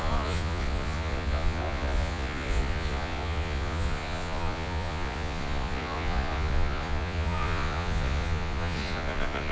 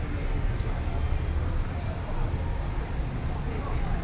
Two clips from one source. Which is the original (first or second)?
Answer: second